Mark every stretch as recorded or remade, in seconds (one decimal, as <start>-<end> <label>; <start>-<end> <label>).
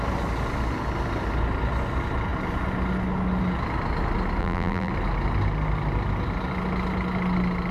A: 0.0-4.4 recorded; 4.4-4.9 remade; 4.9-7.7 recorded